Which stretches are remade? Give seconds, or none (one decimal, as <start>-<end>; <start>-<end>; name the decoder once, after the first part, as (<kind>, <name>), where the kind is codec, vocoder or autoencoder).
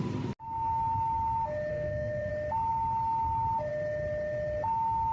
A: 1.7-2.3 (codec, SNAC)